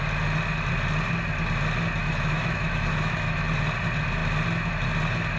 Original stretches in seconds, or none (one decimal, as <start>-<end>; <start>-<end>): 0.0-2.0; 3.5-5.4